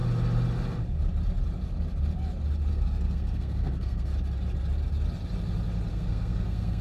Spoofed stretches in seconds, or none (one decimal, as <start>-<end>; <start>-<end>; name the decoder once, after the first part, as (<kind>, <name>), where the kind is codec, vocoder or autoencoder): 2.7-4.1 (codec, SNAC); 5.9-6.8